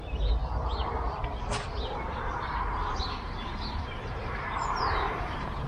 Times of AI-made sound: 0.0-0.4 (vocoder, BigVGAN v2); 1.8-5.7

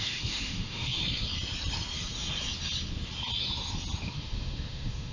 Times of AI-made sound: 0.0-1.0 (autoencoder, DAC-VAE); 4.1-5.1

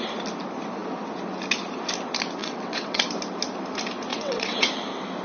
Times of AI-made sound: 2.4-3.1 (vocoder, WaveNeXt); 4.1-4.7